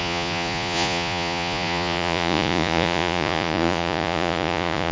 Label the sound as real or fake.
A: fake